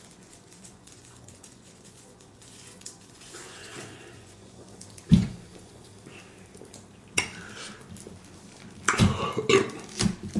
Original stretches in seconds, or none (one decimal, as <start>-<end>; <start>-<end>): 5.9-10.4